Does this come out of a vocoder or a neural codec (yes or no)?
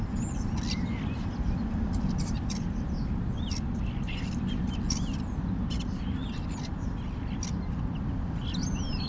no